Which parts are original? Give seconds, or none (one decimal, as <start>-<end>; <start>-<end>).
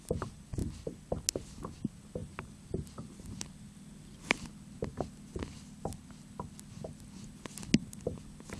0.0-8.6